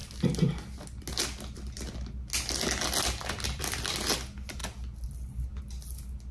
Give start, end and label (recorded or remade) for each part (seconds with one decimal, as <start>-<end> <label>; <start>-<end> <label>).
0.0-6.3 recorded

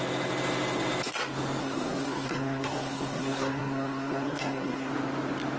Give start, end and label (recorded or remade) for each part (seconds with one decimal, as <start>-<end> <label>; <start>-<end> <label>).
0.0-1.6 recorded; 1.6-4.9 remade; 4.9-5.6 recorded

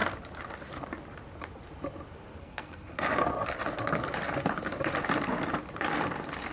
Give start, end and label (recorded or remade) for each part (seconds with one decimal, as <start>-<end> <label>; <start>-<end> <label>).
0.0-2.4 recorded; 2.4-3.1 remade; 3.1-6.5 recorded

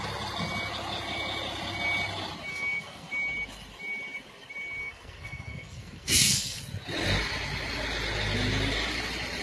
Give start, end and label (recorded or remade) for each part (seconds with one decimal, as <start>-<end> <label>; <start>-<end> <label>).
0.0-2.5 recorded; 2.5-3.1 remade; 3.1-4.8 recorded; 4.8-6.6 remade; 6.6-9.4 recorded

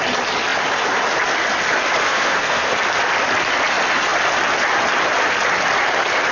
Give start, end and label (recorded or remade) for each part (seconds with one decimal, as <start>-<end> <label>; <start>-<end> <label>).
0.0-2.0 recorded; 2.0-2.7 remade; 2.7-6.3 recorded